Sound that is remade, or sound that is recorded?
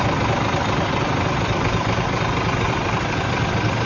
remade